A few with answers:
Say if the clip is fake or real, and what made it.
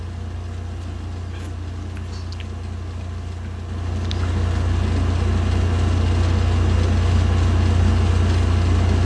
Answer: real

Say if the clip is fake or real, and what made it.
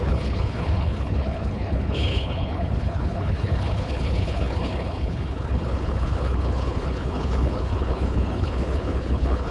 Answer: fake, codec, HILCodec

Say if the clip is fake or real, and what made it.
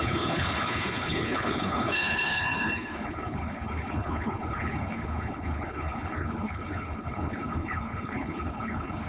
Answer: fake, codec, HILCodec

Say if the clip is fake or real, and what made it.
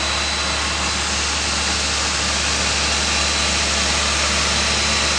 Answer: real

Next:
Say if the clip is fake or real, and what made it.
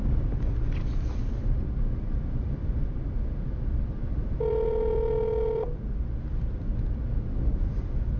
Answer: fake, vocoder, BigVGAN v2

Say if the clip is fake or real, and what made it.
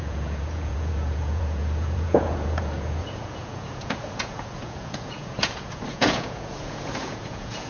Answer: fake, vocoder, Vocos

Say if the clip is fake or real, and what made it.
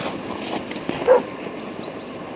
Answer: real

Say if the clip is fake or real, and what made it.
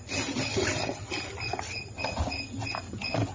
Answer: real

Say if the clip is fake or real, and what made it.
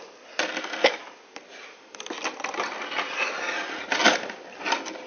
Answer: real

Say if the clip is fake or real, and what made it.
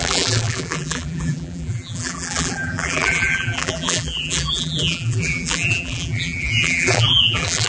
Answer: fake, vocoder, BigVGAN v2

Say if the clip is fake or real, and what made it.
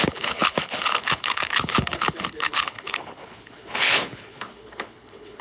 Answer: fake, codec, HILCodec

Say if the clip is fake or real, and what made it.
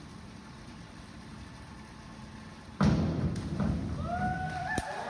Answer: real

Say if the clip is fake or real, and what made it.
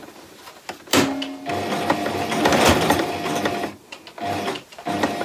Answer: real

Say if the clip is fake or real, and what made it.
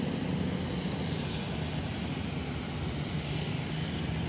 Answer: real